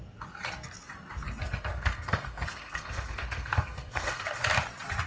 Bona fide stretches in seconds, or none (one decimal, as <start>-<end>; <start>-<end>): 0.0-1.4; 4.4-5.1